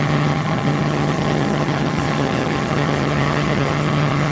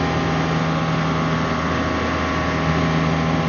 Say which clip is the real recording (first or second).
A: second